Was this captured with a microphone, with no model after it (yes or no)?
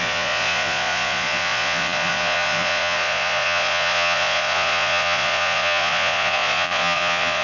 no